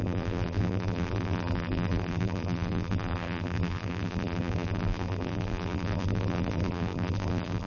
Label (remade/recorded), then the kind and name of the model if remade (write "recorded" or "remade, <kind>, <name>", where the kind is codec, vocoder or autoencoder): remade, vocoder, BigVGAN v2